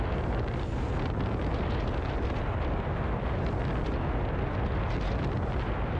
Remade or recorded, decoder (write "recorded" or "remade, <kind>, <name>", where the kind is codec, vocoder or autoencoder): recorded